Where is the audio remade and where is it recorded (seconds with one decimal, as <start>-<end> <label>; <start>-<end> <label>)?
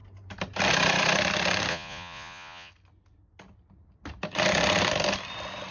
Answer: 0.0-1.7 recorded; 1.7-2.7 remade; 2.7-5.7 recorded